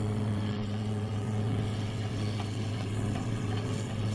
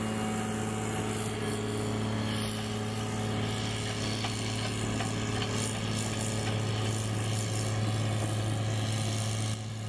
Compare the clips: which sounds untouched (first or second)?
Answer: second